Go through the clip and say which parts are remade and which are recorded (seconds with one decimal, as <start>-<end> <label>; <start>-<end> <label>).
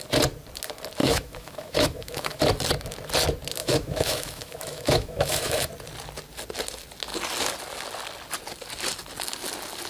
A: 0.0-1.0 recorded; 1.0-2.4 remade; 2.4-3.6 recorded; 3.6-5.7 remade; 5.7-9.9 recorded